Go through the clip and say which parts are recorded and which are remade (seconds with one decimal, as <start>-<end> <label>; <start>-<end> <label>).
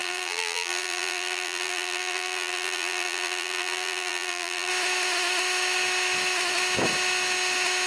0.0-4.7 remade; 4.7-7.9 recorded